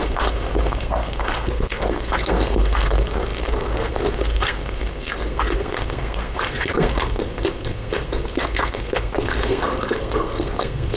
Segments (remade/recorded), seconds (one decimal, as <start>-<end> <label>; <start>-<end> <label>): 0.0-11.0 remade